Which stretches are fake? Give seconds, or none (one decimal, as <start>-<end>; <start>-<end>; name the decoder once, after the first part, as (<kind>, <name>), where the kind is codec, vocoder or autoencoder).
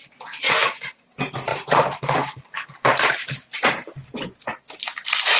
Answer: 1.5-4.4 (vocoder, BigVGAN v2)